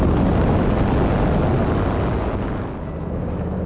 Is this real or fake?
real